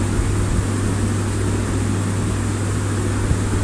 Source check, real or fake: real